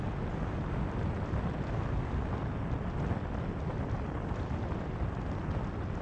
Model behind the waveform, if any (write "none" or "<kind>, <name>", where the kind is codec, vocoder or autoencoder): none